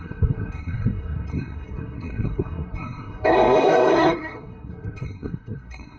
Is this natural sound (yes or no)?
no